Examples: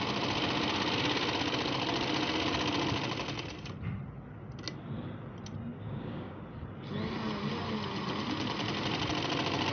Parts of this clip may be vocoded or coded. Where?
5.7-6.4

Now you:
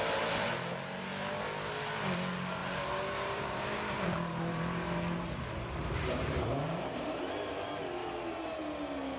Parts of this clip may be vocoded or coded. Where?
2.6-7.3; 8.0-8.6

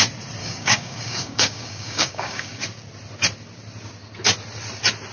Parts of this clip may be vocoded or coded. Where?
0.4-2.6

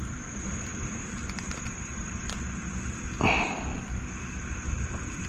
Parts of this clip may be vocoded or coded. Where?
none

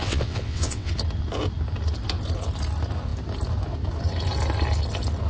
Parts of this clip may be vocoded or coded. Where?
0.0-0.9